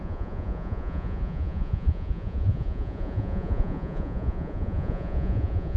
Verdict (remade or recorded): remade